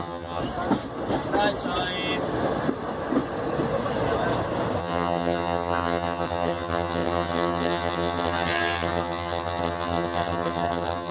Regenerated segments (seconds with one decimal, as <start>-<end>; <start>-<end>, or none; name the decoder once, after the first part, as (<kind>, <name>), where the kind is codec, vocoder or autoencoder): 0.0-0.4 (vocoder, HiFi-GAN); 4.8-11.1

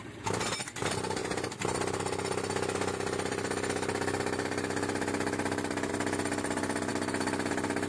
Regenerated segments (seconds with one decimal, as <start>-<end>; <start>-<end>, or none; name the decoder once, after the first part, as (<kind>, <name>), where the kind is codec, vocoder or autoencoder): none

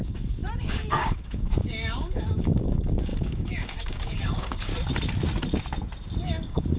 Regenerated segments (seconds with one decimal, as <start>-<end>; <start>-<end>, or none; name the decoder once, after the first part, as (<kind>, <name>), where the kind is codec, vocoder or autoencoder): 0.0-4.7 (codec, DAC); 6.2-6.8

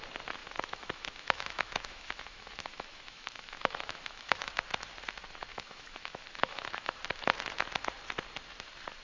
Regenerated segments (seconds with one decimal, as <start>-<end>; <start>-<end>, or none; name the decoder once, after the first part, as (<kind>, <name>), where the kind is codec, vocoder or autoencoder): 0.4-4.5 (autoencoder, DAC-VAE); 5.5-7.0